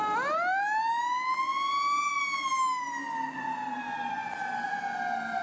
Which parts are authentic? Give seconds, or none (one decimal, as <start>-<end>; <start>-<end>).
0.0-5.4